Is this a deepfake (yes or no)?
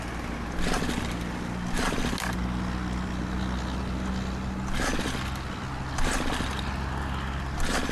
no